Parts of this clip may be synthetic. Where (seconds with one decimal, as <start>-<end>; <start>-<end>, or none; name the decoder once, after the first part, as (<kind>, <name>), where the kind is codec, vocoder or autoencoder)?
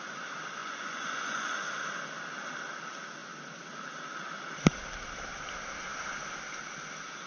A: 0.6-1.6 (vocoder, Vocos)